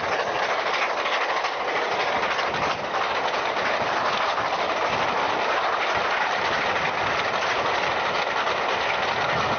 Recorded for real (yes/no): yes